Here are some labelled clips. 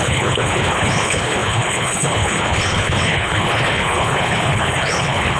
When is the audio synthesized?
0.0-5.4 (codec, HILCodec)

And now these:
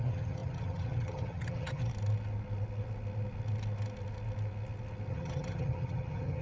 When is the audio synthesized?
0.0-1.9 (vocoder, HiFi-GAN); 5.1-6.4

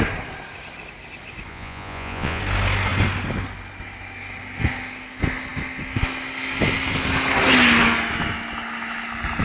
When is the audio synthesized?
1.5-2.4 (vocoder, Vocos)

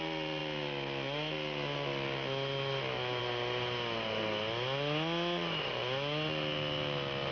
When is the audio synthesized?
none

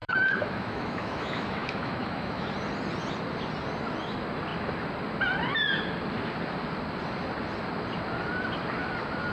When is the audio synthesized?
0.0-2.5 (autoencoder, DAC-VAE)